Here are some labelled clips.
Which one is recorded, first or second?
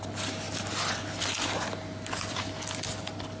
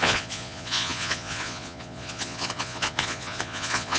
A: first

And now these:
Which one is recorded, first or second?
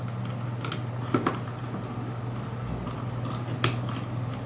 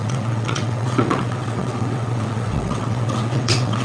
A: first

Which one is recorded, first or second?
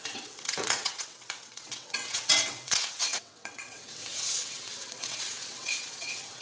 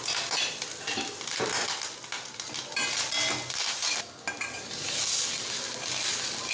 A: second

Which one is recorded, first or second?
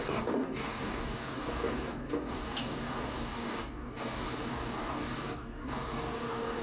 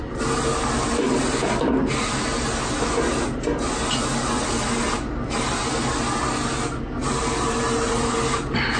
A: second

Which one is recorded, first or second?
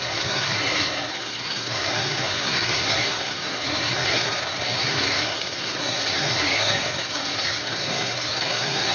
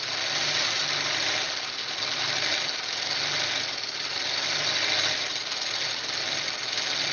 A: second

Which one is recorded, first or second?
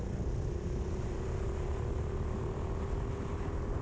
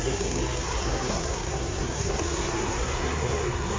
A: first